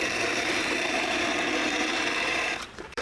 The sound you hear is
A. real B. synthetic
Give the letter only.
B